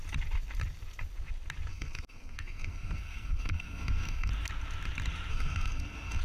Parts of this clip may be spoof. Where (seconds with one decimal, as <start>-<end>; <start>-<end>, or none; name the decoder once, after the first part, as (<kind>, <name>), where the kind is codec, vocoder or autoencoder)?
1.7-4.3 (codec, SNAC); 5.3-6.2